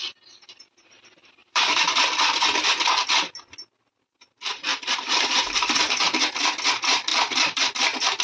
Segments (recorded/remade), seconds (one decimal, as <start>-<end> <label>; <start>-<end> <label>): 0.0-1.4 recorded; 1.4-1.9 remade; 1.9-4.7 recorded; 4.7-6.2 remade; 6.2-7.1 recorded; 7.1-7.7 remade; 7.7-8.2 recorded